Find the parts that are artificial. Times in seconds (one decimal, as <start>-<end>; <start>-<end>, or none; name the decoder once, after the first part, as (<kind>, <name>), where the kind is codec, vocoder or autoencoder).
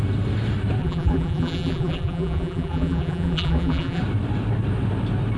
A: 0.8-4.0 (vocoder, BigVGAN v2)